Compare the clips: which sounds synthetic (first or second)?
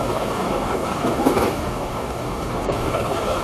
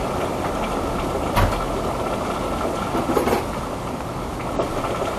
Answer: first